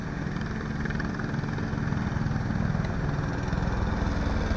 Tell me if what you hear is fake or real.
real